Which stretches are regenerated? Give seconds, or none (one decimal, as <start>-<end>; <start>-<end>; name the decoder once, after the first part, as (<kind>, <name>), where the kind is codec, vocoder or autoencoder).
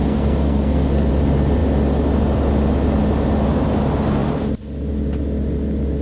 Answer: 0.0-1.1 (codec, SNAC)